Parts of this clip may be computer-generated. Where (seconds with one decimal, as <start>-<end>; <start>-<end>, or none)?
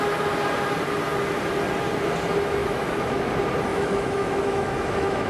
2.6-3.3; 3.7-5.3